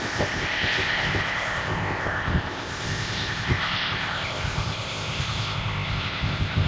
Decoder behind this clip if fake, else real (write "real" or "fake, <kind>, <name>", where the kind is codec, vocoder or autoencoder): fake, codec, ZipCodec